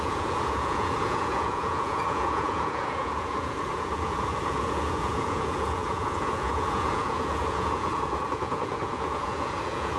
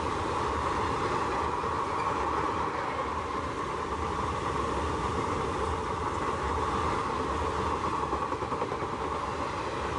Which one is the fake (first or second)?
first